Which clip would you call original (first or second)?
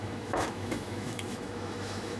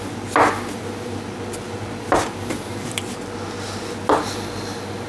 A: second